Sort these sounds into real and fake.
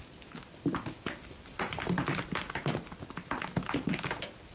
real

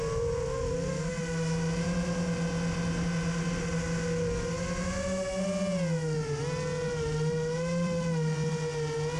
real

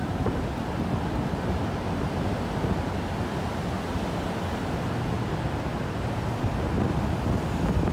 real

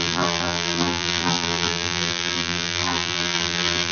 fake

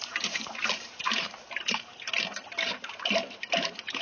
fake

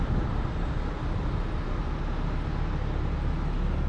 real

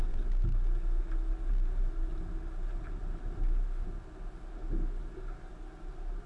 real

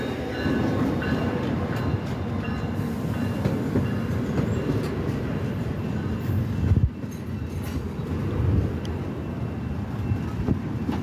real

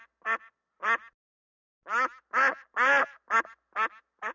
real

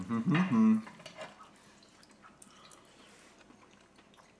real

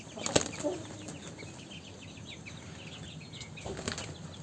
real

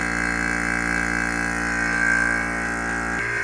real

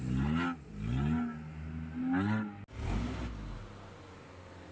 real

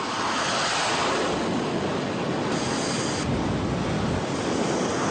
real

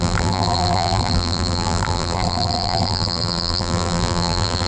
fake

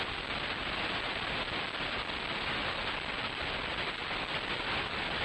real